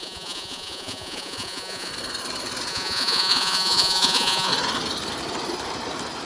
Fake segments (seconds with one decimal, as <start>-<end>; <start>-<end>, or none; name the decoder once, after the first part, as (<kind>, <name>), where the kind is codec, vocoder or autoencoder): 0.0-1.9 (vocoder, Vocos); 2.7-4.5